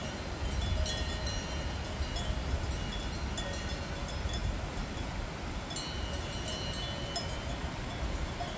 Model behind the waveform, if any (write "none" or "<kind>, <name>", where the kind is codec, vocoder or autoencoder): none